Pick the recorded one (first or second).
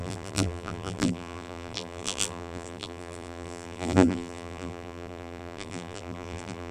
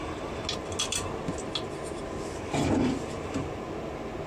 second